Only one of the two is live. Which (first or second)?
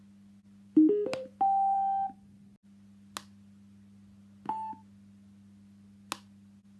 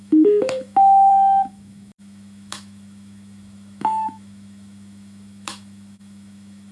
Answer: first